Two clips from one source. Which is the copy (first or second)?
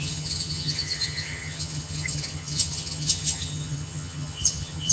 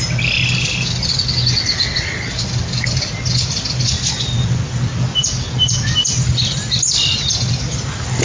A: first